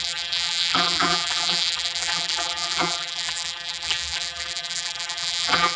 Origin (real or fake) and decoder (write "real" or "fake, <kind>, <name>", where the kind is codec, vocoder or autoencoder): fake, vocoder, BigVGAN v2